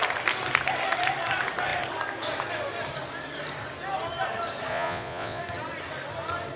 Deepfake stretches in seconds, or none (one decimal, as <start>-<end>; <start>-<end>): 4.7-5.4